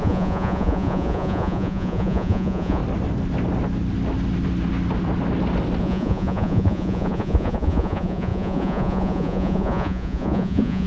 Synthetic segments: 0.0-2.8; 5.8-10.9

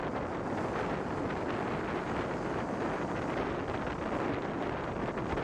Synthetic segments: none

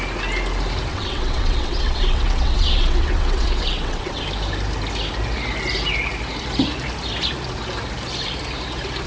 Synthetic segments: 0.9-4.2